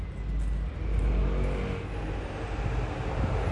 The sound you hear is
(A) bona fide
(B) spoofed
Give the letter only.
A